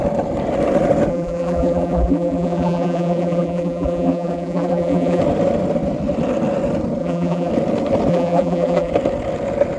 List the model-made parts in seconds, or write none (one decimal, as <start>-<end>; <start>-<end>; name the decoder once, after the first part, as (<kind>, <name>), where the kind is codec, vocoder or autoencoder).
1.1-5.2 (vocoder, BigVGAN v2); 7.0-7.5; 8.1-8.9

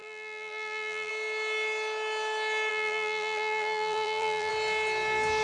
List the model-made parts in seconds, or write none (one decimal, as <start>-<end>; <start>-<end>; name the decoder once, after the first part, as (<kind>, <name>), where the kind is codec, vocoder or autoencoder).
0.0-1.1 (vocoder, BigVGAN v2); 2.7-4.5

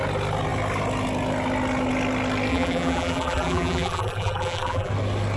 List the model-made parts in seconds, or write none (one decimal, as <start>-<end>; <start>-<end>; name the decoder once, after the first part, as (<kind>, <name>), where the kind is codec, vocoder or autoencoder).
2.5-4.9 (vocoder, BigVGAN v2)

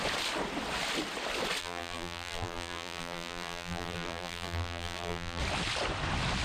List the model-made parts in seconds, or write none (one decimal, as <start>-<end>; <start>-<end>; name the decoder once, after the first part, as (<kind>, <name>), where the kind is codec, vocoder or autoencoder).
1.6-5.4 (vocoder, BigVGAN v2)

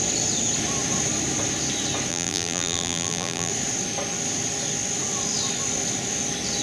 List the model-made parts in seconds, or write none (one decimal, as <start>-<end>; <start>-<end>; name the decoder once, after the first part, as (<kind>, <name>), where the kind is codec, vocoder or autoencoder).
2.1-3.5 (vocoder, BigVGAN v2)

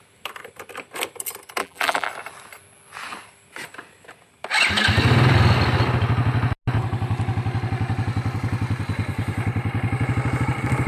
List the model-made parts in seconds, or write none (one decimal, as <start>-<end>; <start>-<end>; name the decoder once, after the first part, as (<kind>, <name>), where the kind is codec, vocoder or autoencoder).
1.6-2.1 (vocoder, BigVGAN v2)